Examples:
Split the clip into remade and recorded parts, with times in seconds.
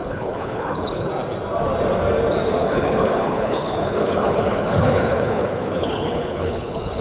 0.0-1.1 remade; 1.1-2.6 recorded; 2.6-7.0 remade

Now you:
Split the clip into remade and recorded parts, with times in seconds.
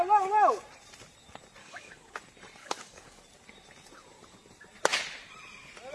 0.0-1.6 recorded; 1.6-2.1 remade; 2.1-2.6 recorded; 2.6-3.2 remade; 3.2-5.9 recorded